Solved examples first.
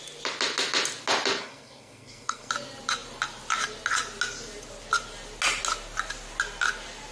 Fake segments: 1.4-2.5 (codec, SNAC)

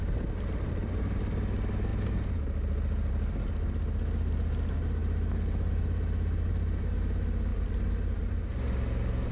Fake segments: none

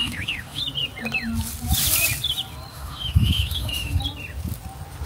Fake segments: 0.0-0.6 (autoencoder, DAC-VAE); 2.7-4.0

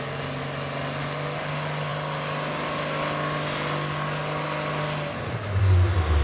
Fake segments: none

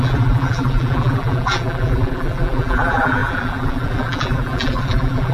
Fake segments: 0.0-5.3 (vocoder, BigVGAN v2)

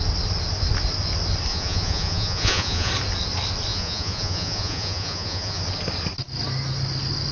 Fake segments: 1.5-2.9 (vocoder, Vocos); 3.7-5.6

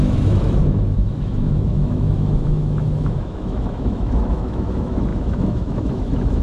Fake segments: 0.0-6.4 (autoencoder, DAC-VAE)

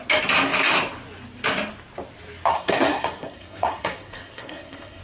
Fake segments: 2.5-5.0 (codec, SNAC)